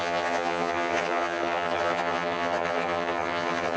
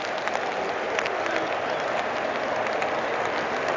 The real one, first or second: second